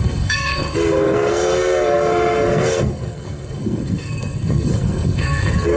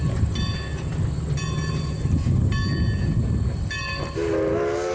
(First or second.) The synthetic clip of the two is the first